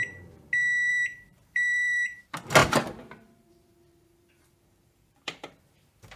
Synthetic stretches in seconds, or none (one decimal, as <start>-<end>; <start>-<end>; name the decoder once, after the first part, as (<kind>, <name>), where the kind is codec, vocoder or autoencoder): 0.9-2.2 (vocoder, BigVGAN v2); 2.6-5.5